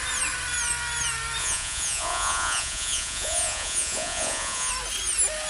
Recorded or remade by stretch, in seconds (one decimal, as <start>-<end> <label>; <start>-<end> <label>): 0.0-1.4 recorded; 1.4-4.7 remade; 4.7-5.5 recorded